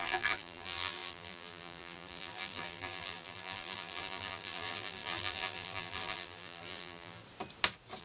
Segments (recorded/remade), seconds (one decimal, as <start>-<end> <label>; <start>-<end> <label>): 0.0-7.2 remade; 7.2-8.0 recorded